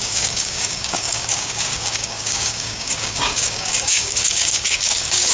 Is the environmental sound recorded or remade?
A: remade